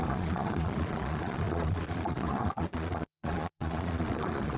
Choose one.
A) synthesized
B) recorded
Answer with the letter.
A